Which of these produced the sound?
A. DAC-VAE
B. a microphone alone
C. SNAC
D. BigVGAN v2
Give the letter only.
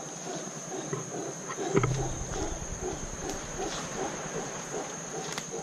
D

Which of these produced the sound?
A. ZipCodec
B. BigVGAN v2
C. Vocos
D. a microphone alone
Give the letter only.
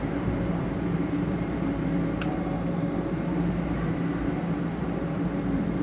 B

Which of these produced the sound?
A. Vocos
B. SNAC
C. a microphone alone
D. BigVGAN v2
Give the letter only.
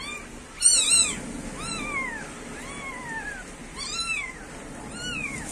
C